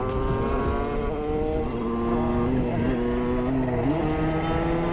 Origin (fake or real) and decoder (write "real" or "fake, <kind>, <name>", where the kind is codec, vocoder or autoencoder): real